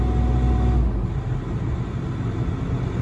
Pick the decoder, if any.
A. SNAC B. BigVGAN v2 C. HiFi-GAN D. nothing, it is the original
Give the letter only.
D